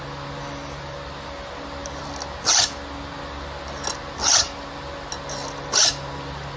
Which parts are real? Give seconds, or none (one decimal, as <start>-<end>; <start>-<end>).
0.0-6.6